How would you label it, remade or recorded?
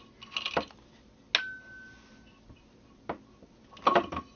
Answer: recorded